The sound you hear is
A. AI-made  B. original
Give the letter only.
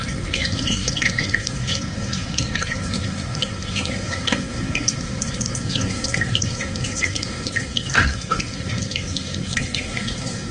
A